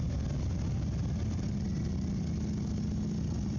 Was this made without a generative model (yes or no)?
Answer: yes